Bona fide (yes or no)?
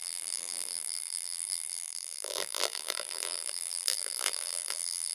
no